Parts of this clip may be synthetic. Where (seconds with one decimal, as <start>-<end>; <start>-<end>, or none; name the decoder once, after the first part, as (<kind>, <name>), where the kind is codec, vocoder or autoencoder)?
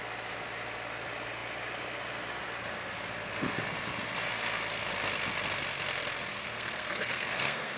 6.3-7.8 (codec, SNAC)